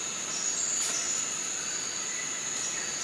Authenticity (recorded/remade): recorded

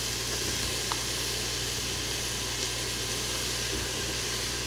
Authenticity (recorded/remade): recorded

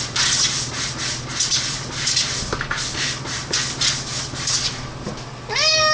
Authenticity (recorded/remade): recorded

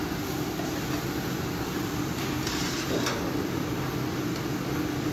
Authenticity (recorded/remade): recorded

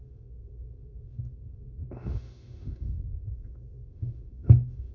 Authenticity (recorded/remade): remade